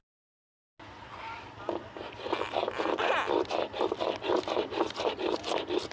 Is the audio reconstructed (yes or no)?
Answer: no